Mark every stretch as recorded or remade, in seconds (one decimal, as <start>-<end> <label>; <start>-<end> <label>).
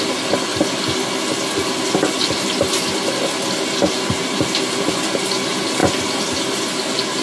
0.0-0.5 remade; 0.5-4.4 recorded; 4.4-7.2 remade